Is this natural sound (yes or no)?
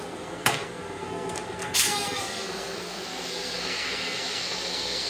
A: no